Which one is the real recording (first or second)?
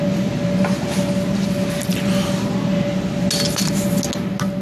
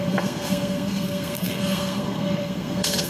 first